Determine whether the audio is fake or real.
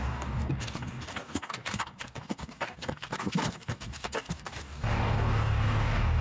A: fake